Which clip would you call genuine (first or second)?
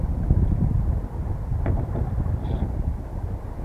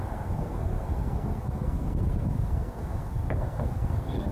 first